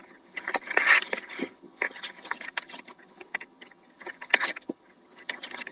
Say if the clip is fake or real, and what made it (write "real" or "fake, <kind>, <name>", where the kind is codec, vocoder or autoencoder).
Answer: fake, vocoder, HiFi-GAN